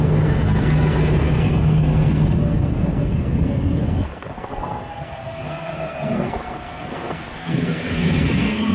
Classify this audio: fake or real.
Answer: fake